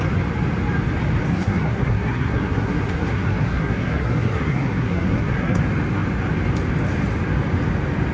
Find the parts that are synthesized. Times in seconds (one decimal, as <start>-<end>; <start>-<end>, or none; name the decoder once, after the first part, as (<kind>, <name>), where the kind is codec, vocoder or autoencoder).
1.3-5.6 (codec, SNAC)